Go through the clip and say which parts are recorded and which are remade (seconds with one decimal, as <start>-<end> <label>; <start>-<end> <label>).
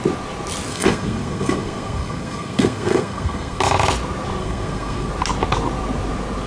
0.0-0.7 recorded; 0.7-3.6 remade; 3.6-4.4 recorded; 4.4-5.1 remade; 5.1-6.5 recorded